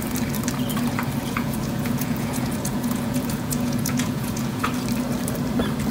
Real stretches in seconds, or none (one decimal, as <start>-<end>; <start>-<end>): 0.0-1.2; 4.7-5.9